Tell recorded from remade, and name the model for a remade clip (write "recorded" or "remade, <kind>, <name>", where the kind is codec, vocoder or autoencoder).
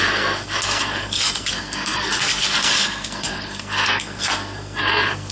remade, codec, SNAC